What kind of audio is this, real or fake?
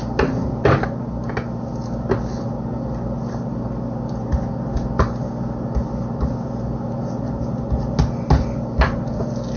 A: real